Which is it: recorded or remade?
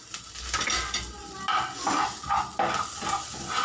recorded